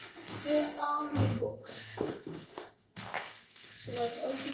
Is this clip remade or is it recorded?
remade